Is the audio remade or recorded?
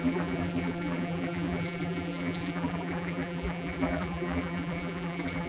remade